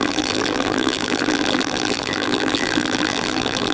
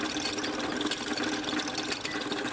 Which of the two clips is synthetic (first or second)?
first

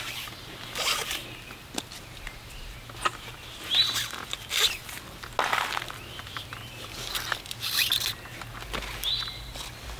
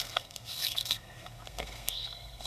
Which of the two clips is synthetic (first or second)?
second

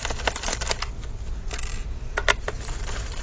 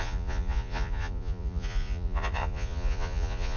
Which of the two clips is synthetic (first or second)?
second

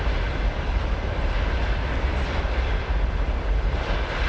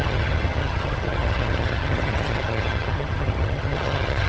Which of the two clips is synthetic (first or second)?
second